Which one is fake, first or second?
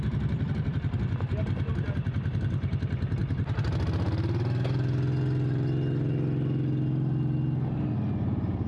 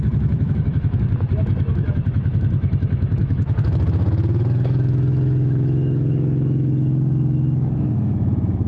second